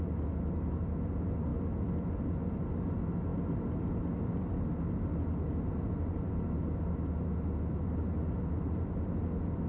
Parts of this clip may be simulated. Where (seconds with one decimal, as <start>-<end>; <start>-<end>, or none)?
none